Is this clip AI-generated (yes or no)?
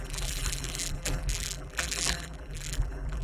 yes